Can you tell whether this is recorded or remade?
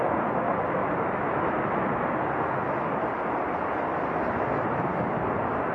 recorded